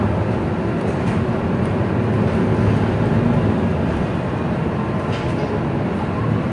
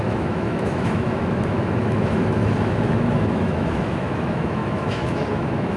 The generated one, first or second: second